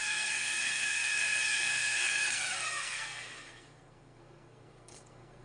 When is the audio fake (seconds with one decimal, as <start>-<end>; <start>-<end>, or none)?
0.0-5.4